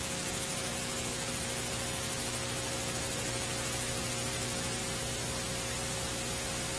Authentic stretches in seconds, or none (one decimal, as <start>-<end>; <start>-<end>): 4.8-6.8